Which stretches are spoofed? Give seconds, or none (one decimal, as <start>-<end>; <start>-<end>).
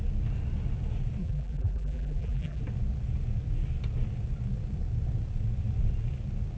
1.2-2.6